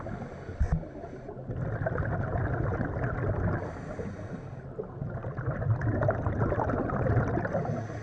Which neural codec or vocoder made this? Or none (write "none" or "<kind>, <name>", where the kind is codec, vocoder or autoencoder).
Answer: none